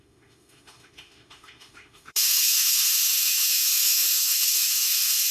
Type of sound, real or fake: fake